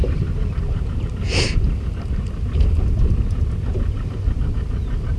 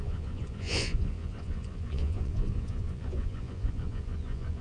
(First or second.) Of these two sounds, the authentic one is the first